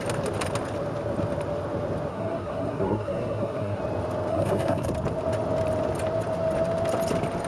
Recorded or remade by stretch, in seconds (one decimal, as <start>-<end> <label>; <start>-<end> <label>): 0.0-2.1 recorded; 2.1-3.8 remade; 3.8-4.3 recorded; 4.3-4.9 remade; 4.9-7.5 recorded